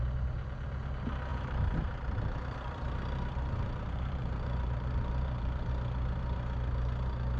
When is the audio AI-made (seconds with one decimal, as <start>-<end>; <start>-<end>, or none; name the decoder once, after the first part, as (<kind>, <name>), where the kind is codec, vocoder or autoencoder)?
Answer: 1.3-5.7 (vocoder, BigVGAN v2)